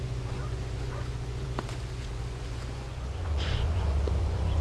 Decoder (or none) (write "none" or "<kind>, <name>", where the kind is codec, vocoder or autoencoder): vocoder, Vocos